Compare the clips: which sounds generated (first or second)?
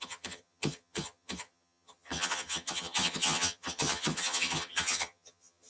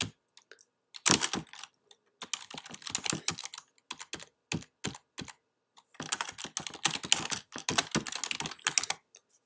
first